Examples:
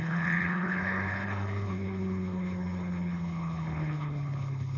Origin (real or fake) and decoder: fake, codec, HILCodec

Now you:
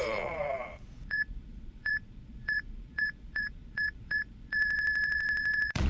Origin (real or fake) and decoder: fake, vocoder, Vocos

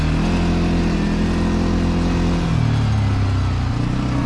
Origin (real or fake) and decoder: real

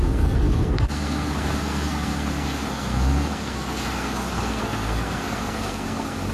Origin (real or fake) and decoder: fake, codec, SNAC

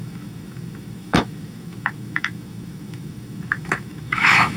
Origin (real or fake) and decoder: fake, autoencoder, DAC-VAE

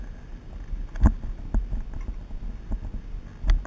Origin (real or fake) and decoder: real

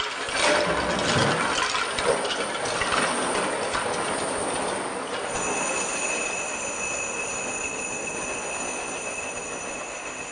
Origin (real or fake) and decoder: real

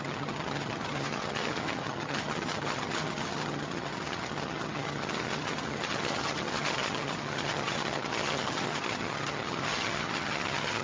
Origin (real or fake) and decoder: fake, vocoder, HiFi-GAN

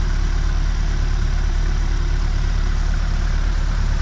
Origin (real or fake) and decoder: fake, vocoder, BigVGAN v2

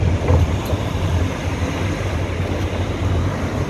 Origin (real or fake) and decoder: real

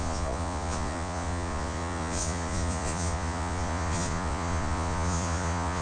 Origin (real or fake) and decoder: fake, vocoder, Vocos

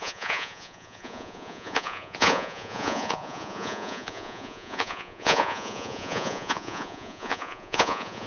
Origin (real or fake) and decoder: fake, vocoder, Vocos